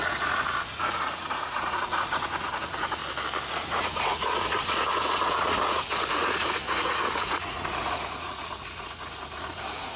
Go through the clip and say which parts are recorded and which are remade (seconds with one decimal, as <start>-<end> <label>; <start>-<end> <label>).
0.0-3.0 remade; 3.0-3.5 recorded; 3.5-10.0 remade